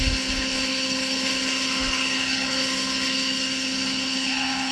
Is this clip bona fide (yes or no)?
no